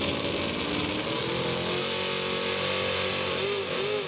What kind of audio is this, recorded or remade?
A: recorded